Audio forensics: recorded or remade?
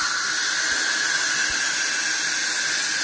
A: recorded